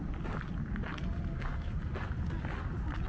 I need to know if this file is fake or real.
real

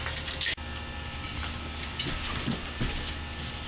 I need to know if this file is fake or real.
real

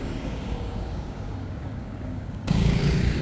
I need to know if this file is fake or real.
fake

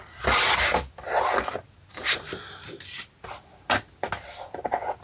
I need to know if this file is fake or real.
real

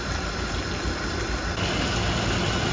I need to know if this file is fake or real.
real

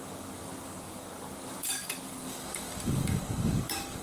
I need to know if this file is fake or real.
fake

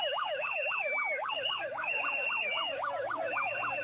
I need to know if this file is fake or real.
fake